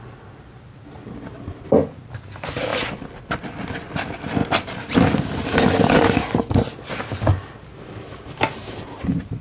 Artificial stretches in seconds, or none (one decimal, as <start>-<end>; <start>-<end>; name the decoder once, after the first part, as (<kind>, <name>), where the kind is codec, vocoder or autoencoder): none